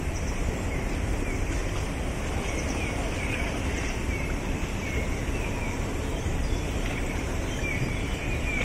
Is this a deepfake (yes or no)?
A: yes